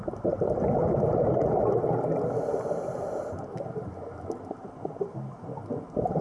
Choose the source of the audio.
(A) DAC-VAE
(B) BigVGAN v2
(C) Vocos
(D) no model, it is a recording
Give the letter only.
D